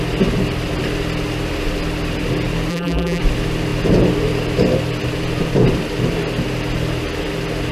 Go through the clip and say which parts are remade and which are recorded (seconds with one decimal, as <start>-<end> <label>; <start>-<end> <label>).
0.0-2.7 recorded; 2.7-3.2 remade; 3.2-7.7 recorded